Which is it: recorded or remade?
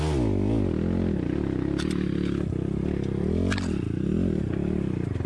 recorded